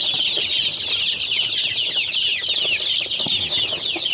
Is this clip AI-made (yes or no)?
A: no